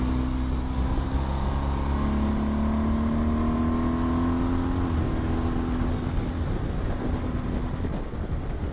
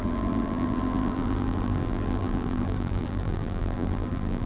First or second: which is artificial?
second